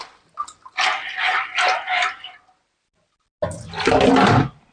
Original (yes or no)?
yes